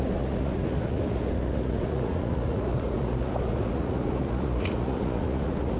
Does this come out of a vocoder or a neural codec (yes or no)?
yes